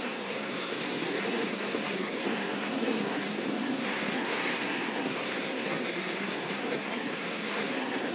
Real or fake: fake